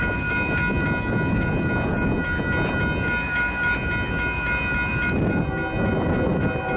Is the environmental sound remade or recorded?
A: recorded